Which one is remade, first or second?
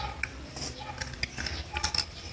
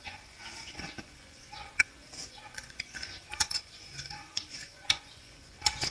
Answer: second